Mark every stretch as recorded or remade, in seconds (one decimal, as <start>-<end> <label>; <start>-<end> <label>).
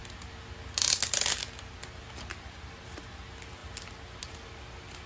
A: 0.0-5.1 recorded